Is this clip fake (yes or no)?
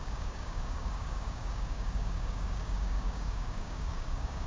yes